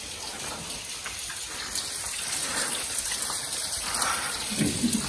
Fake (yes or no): no